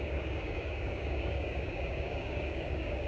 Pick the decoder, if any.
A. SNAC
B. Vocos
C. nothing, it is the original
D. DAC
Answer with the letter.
D